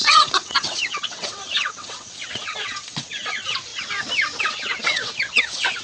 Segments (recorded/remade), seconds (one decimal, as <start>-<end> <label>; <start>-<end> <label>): 0.0-3.7 remade; 3.7-4.4 recorded; 4.4-5.8 remade